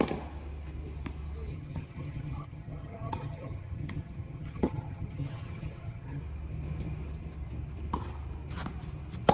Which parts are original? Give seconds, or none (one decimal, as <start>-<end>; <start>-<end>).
0.0-1.5; 6.2-9.3